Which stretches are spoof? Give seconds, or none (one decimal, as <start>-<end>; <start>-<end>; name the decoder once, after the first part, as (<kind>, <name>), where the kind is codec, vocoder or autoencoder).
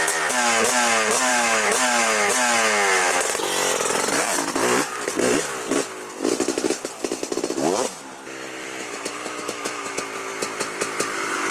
1.3-2.3 (autoencoder, DAC-VAE); 8.6-10.0